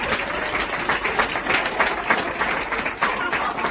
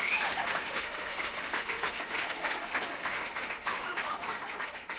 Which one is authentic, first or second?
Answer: first